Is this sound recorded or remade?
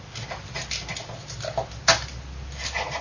recorded